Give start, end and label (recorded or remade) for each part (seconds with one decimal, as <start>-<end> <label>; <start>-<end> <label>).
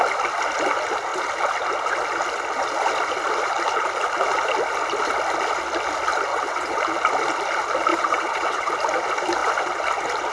0.0-6.3 recorded; 6.3-6.8 remade; 6.8-7.9 recorded; 7.9-8.7 remade; 8.7-10.3 recorded